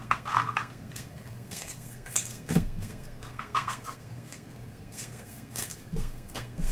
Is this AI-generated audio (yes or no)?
yes